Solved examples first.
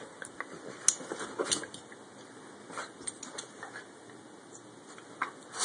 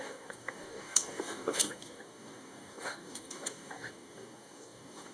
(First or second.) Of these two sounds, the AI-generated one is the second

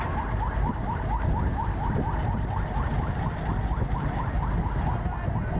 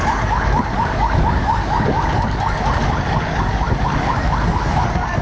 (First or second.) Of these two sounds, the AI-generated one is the second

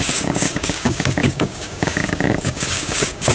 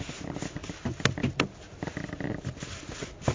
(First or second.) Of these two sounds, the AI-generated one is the first